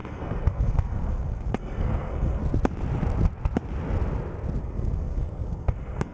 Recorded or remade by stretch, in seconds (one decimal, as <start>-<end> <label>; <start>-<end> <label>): 0.0-2.4 remade; 2.4-4.6 recorded; 4.6-6.1 remade